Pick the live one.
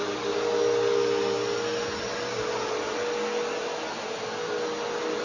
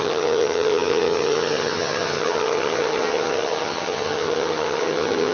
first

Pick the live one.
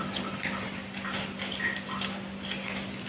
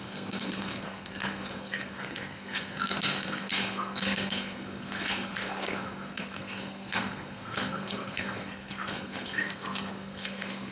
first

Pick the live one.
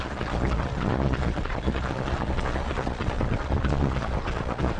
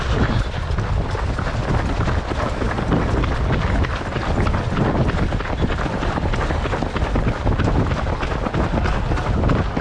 second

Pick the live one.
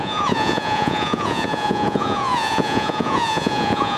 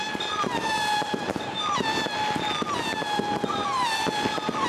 second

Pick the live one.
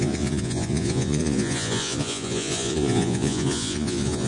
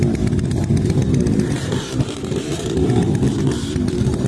second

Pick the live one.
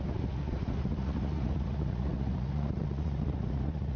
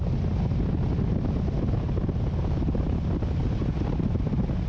second